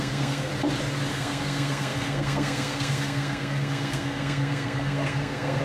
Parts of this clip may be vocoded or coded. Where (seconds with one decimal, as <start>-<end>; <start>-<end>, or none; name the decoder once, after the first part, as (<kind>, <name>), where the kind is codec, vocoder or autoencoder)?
0.0-0.5 (codec, SNAC); 1.1-5.6